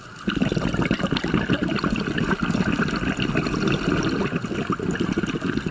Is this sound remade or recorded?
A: recorded